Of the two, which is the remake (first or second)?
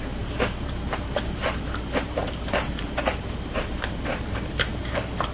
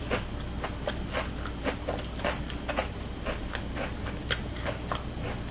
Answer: first